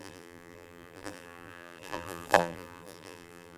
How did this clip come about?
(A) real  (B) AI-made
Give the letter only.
B